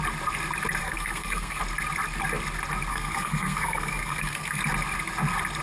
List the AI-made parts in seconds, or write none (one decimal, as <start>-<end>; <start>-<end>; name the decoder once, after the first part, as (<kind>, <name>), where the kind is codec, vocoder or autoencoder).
0.8-1.6 (codec, SNAC); 2.9-4.6